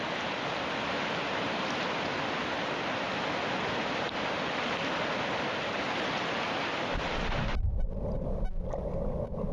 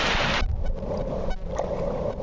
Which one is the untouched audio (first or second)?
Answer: first